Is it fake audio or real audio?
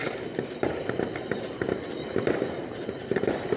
fake